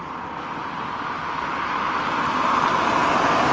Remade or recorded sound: recorded